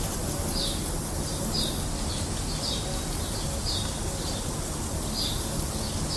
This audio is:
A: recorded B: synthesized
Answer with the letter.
A